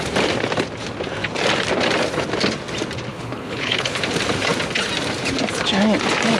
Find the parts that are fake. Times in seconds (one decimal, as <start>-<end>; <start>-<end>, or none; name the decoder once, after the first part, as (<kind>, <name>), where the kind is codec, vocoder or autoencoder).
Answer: 3.1-4.0 (codec, HILCodec)